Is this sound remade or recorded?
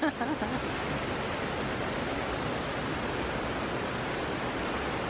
recorded